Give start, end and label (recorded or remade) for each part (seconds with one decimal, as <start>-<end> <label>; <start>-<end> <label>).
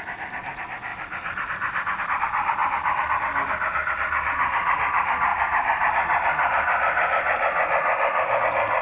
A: 0.0-8.8 recorded